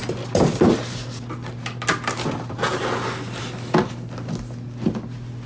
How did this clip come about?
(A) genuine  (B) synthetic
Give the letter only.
A